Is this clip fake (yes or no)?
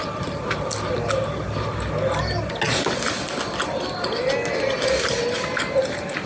no